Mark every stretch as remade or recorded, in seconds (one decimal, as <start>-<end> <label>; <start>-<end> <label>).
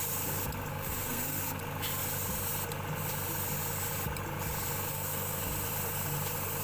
0.0-0.7 recorded; 0.7-1.6 remade; 1.6-4.9 recorded; 4.9-5.4 remade; 5.4-6.6 recorded